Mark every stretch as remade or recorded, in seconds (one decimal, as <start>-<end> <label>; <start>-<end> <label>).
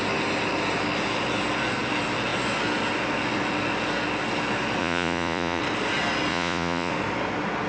0.0-4.8 recorded; 4.8-5.6 remade; 5.6-6.3 recorded; 6.3-6.9 remade; 6.9-7.7 recorded